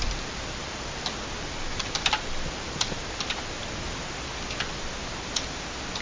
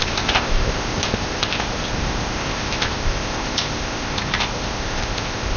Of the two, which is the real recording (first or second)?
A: first